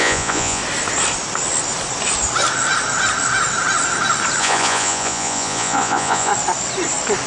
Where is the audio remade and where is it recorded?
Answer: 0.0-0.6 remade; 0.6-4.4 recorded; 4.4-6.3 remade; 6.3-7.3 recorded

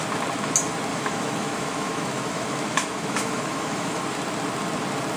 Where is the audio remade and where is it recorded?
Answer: 0.0-0.9 recorded; 0.9-4.0 remade; 4.0-5.2 recorded

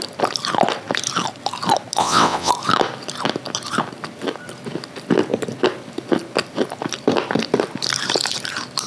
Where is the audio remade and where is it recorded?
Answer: 0.0-2.0 recorded; 2.0-2.5 remade; 2.5-8.9 recorded

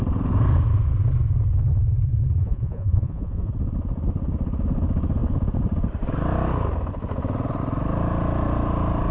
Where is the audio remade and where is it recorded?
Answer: 0.0-2.4 recorded; 2.4-3.5 remade; 3.5-9.1 recorded